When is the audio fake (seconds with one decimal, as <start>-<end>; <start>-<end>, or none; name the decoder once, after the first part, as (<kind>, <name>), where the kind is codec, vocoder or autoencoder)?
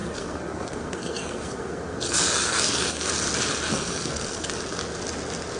0.0-3.1 (codec, SNAC); 3.7-4.5